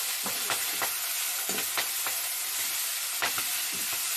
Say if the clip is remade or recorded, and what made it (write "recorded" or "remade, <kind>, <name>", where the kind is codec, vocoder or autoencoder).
recorded